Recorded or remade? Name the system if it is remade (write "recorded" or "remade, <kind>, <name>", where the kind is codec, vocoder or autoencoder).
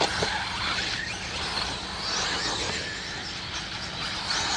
recorded